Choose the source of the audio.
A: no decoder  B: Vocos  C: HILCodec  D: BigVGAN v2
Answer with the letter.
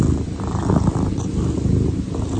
A